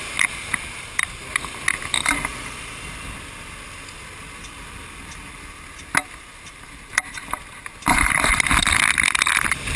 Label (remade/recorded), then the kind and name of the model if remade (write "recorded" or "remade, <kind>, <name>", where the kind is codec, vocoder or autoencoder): recorded